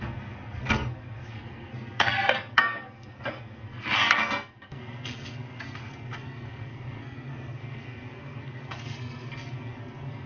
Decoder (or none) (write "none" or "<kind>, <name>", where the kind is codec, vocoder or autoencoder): codec, SNAC